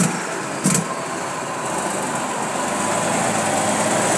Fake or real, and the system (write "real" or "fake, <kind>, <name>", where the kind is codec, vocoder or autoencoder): real